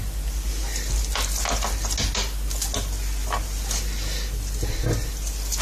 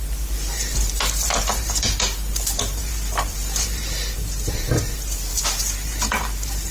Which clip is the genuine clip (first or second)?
first